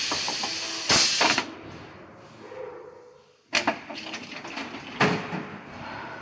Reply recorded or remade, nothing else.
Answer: recorded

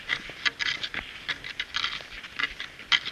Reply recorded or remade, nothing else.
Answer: recorded